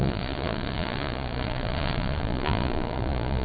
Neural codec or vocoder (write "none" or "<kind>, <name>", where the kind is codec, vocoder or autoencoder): vocoder, Vocos